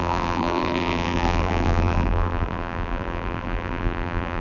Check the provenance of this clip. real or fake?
fake